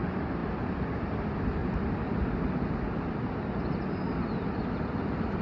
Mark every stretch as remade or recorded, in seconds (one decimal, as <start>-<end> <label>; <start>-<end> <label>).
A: 0.0-1.6 remade; 1.6-4.8 recorded; 4.8-5.4 remade